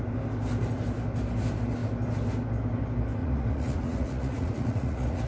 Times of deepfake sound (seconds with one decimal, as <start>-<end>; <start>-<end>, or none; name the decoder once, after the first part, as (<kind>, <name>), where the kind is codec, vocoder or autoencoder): 3.2-5.3 (vocoder, Vocos)

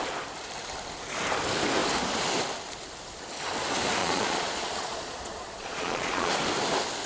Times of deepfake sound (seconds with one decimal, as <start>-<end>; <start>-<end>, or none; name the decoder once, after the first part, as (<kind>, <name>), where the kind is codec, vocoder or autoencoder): 4.0-6.3 (vocoder, Vocos)

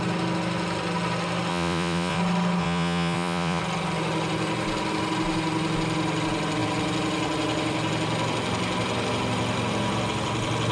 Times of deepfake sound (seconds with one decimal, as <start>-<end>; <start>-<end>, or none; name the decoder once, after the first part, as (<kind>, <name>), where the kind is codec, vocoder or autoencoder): 1.5-2.2 (vocoder, Vocos); 2.6-3.6

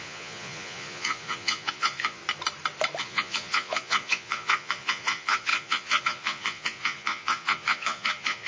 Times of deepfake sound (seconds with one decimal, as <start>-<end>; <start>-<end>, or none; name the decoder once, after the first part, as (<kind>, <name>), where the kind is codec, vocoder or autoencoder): 0.0-2.2 (vocoder, Vocos); 3.0-8.5

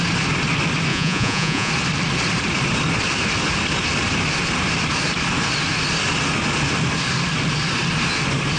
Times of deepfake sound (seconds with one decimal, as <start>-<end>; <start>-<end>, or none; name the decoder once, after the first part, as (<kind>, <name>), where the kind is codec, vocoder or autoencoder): 0.9-1.7 (vocoder, Vocos)

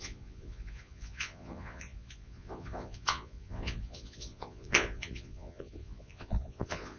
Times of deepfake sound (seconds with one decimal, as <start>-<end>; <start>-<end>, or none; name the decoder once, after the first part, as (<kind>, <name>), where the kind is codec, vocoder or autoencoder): 0.0-7.0 (vocoder, Vocos)

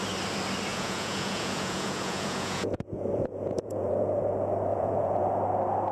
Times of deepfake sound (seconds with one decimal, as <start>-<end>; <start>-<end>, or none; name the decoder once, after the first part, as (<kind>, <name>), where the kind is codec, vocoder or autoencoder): 0.7-4.2 (vocoder, Vocos); 4.7-5.4